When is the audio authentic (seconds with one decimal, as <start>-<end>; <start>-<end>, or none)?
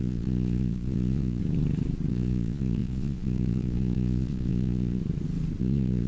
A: 1.4-2.1; 5.0-5.6